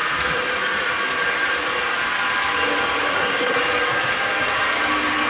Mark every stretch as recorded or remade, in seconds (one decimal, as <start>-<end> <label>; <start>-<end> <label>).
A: 0.0-3.1 recorded; 3.1-3.6 remade; 3.6-5.3 recorded